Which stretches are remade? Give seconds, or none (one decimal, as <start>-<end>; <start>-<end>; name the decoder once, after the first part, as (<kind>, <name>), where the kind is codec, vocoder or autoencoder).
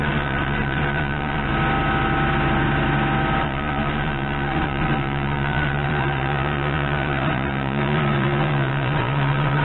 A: 0.0-1.5 (vocoder, Vocos); 3.4-9.6